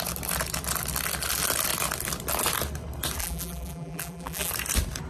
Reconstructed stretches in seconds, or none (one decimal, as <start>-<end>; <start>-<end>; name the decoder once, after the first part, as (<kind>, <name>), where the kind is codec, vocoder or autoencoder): 3.2-4.5 (vocoder, BigVGAN v2)